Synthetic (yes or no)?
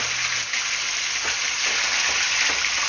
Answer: no